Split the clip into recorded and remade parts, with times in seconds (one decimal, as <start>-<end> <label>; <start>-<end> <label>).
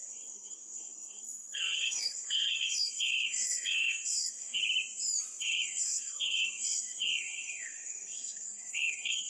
0.0-4.6 remade; 4.6-5.4 recorded; 5.4-9.3 remade